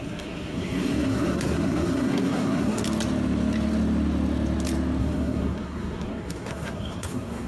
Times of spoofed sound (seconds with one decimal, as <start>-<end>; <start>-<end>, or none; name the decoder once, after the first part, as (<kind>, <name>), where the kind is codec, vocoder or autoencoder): 0.0-2.8 (codec, SNAC); 5.0-7.5